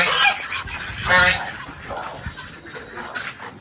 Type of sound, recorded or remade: recorded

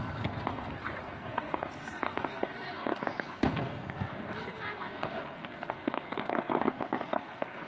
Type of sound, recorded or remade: remade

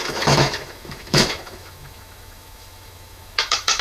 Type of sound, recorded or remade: remade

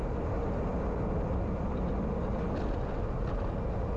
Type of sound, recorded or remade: recorded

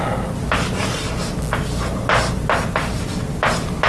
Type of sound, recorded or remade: recorded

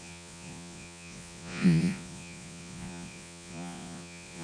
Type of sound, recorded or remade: remade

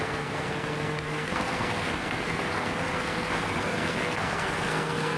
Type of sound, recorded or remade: remade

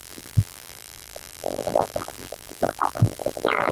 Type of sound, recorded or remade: remade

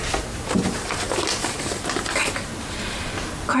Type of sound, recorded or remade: recorded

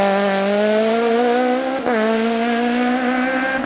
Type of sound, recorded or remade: recorded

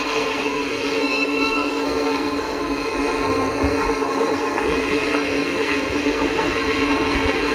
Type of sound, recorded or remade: remade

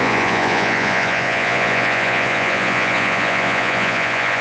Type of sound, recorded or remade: remade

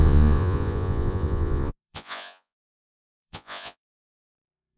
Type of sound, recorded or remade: remade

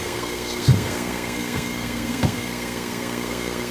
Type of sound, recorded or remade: remade